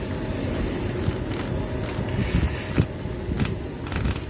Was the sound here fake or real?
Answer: real